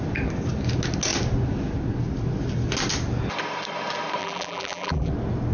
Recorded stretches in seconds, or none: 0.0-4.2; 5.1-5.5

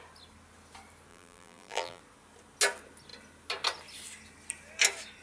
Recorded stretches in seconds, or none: 0.0-1.1; 2.0-5.2

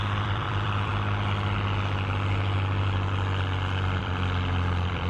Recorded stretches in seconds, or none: 0.9-4.0

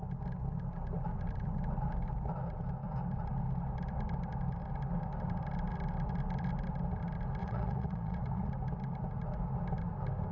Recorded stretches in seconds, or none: 0.0-7.4; 8.5-10.3

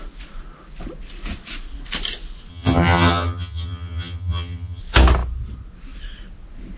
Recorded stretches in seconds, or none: 0.0-2.5; 4.8-6.8

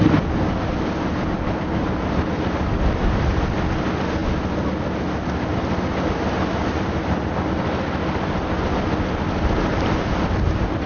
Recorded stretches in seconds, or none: 0.0-10.9

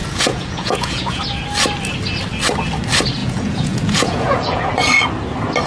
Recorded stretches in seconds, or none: 1.2-3.2; 4.7-5.7